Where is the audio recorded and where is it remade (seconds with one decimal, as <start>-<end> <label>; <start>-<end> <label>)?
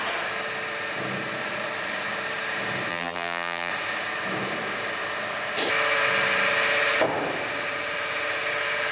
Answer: 0.0-2.9 recorded; 2.9-3.7 remade; 3.7-8.9 recorded